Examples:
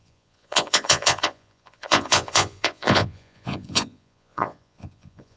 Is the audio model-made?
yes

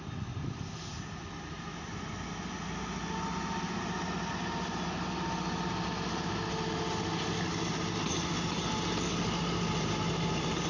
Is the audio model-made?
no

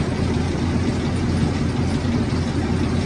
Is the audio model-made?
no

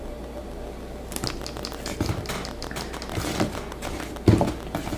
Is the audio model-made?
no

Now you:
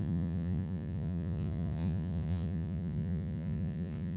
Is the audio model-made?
yes